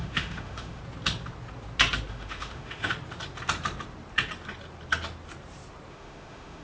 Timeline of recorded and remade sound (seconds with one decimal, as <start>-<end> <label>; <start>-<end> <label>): 0.0-0.8 remade; 0.8-2.1 recorded; 2.1-2.9 remade; 2.9-5.9 recorded; 5.9-6.6 remade